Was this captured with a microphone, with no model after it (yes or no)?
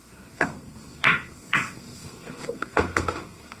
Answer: no